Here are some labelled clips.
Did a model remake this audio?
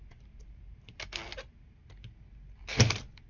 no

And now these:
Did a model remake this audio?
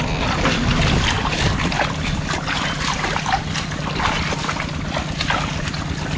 no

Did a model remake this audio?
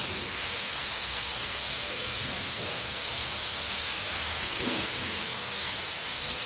yes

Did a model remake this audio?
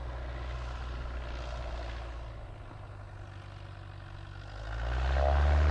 no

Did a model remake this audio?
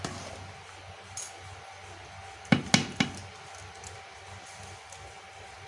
no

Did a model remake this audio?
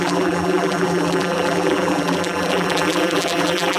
yes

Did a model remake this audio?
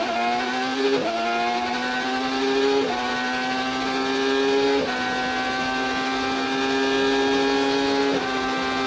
no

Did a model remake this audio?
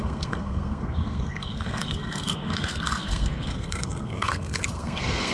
yes